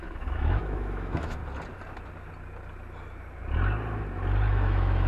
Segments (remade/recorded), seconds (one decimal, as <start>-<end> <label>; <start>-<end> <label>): 0.0-1.4 remade; 1.4-4.5 recorded; 4.5-5.1 remade